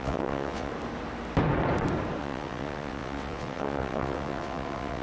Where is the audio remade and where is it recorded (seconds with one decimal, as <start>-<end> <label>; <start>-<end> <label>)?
0.0-0.7 remade; 0.7-2.2 recorded; 2.2-5.0 remade